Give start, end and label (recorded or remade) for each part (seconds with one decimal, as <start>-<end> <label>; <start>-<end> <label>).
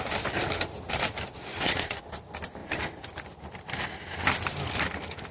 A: 0.0-1.5 recorded; 1.5-2.0 remade; 2.0-5.3 recorded